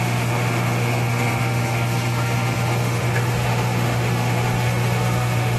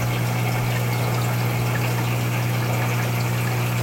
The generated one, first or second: first